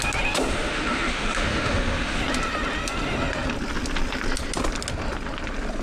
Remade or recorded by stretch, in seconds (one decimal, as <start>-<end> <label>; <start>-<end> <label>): 0.0-0.5 recorded; 0.5-2.2 remade; 2.2-5.8 recorded